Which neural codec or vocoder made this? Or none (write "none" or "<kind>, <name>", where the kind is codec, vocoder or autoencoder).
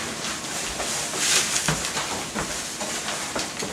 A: none